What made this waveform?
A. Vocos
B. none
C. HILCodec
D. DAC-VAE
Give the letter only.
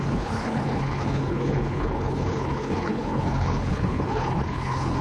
C